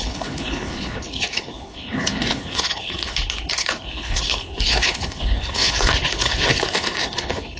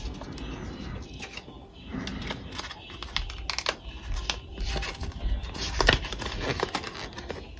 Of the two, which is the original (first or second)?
second